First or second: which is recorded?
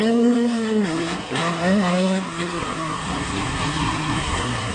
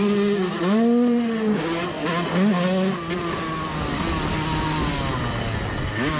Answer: second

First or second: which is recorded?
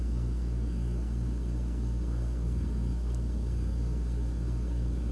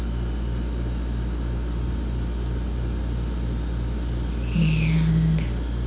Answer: second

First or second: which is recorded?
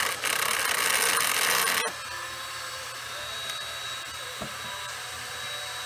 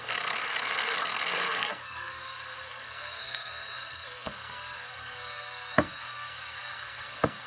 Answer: first